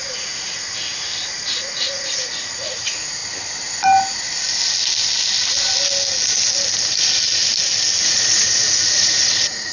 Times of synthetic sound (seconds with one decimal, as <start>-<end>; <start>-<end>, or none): 0.0-0.9; 1.5-3.2; 8.0-9.7

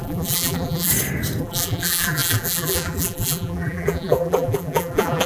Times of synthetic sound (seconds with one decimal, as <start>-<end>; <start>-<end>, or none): 0.0-0.9; 1.4-5.3

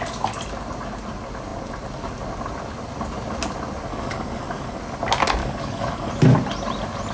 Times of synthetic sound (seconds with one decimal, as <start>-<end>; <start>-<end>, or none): 3.9-4.8; 5.4-6.1

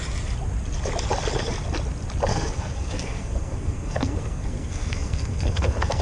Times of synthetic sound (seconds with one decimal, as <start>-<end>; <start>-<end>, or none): 2.3-6.0

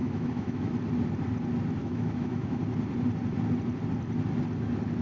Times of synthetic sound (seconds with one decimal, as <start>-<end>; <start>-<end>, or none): 0.0-0.7; 1.8-2.6

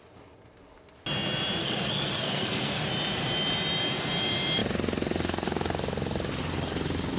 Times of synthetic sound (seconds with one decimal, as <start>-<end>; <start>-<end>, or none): 1.6-2.8

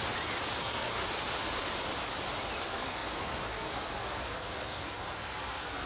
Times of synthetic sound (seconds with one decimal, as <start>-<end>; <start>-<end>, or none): 0.6-1.0; 2.6-5.9

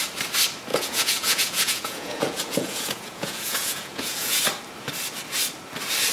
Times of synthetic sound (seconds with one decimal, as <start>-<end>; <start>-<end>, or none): 0.7-4.4